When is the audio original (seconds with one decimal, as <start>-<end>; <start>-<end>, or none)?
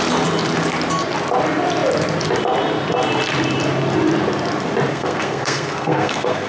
0.0-4.9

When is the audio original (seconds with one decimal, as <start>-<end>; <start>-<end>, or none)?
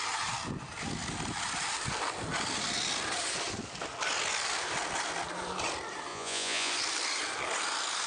0.0-6.1; 6.7-8.1